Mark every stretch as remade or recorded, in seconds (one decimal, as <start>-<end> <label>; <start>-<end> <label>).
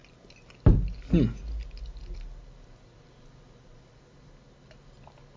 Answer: 0.0-5.4 recorded